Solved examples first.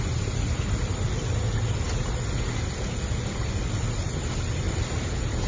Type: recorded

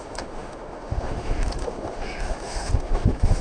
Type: remade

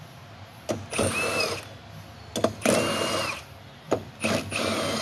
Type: recorded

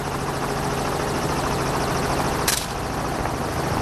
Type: recorded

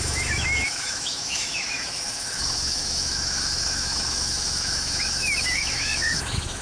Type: remade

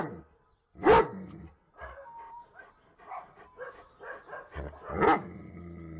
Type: recorded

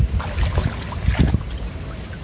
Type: recorded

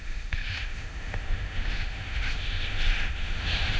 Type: remade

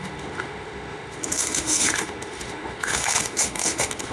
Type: remade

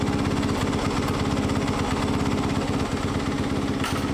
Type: recorded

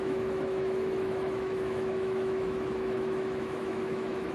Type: remade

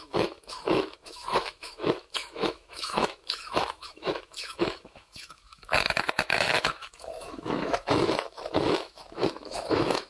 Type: remade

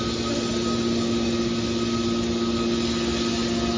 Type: recorded